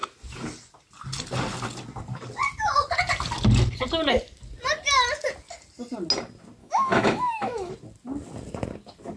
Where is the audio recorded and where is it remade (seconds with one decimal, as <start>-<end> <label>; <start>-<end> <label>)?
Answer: 0.0-6.6 recorded; 6.6-7.7 remade; 7.7-9.2 recorded